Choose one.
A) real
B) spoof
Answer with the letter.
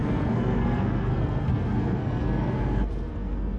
B